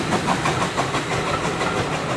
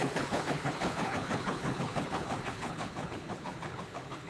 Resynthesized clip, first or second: second